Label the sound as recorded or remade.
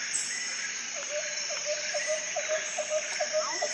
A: remade